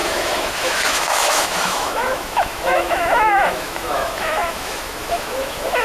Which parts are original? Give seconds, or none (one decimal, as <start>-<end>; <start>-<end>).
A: none